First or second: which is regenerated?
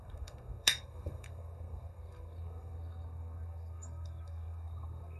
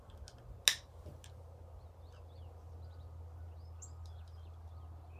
first